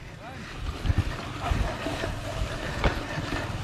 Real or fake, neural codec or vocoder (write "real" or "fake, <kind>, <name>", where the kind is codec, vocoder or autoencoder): real